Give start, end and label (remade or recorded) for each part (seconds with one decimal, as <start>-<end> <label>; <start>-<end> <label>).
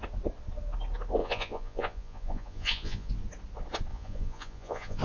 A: 0.0-1.2 recorded; 1.2-3.1 remade; 3.1-3.9 recorded; 3.9-5.0 remade